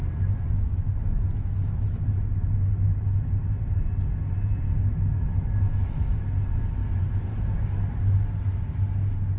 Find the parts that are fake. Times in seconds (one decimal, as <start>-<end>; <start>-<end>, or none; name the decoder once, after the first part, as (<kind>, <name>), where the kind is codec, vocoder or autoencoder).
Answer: 6.8-7.4 (vocoder, BigVGAN v2)